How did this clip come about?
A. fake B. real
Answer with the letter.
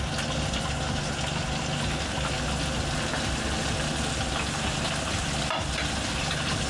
B